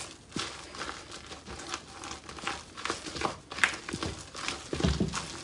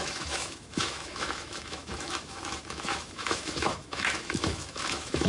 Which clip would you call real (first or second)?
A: first